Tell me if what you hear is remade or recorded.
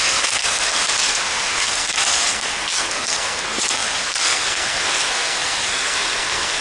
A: remade